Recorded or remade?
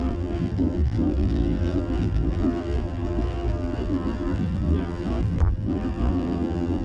remade